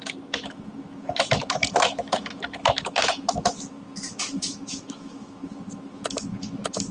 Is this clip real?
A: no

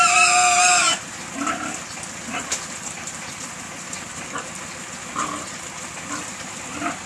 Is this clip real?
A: yes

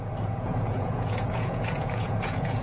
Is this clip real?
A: no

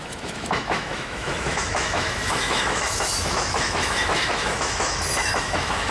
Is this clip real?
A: no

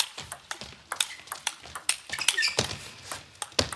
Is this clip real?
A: yes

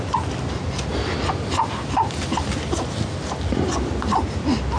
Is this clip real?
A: yes